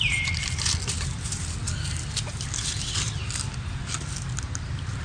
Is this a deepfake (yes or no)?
no